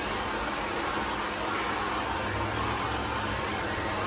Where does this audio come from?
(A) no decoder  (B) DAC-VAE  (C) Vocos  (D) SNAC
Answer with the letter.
A